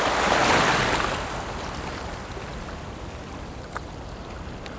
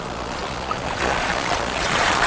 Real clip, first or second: first